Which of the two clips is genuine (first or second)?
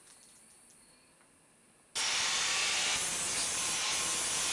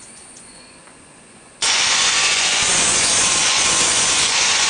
first